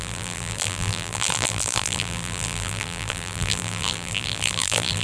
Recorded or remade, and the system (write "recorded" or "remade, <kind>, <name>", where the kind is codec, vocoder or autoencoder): remade, vocoder, BigVGAN v2